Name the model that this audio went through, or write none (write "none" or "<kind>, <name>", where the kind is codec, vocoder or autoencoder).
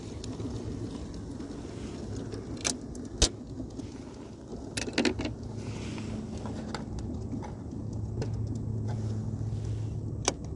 none